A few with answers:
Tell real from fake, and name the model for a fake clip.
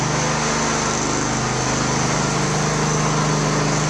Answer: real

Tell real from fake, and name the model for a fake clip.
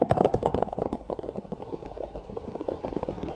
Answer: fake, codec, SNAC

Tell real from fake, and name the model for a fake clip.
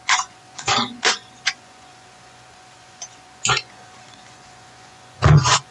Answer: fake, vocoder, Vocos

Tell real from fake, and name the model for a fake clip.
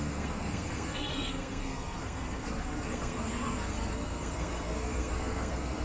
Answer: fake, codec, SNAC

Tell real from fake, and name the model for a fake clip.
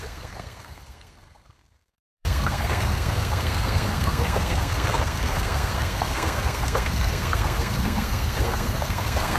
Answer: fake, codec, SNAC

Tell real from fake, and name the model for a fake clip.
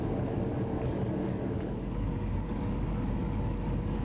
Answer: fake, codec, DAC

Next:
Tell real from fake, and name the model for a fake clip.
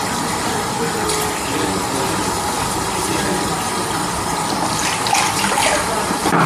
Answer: real